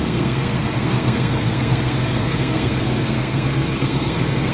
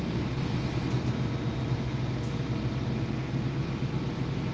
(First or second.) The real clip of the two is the second